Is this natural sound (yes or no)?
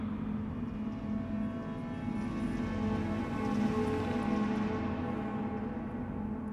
yes